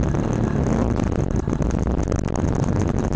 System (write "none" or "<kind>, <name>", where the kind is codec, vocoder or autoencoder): none